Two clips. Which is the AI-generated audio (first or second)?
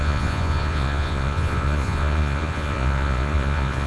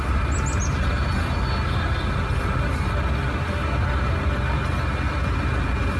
first